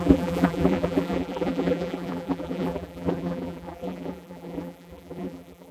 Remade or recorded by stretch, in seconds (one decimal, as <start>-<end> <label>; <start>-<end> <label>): 0.0-5.7 remade